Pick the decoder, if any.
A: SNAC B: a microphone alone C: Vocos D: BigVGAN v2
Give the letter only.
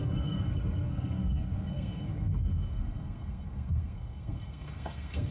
A